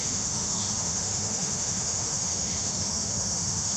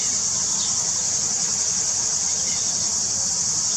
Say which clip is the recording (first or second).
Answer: second